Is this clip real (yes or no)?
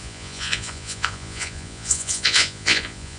no